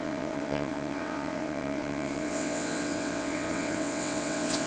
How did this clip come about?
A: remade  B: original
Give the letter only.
A